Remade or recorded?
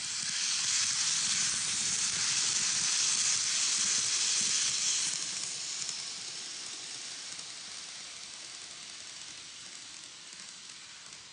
recorded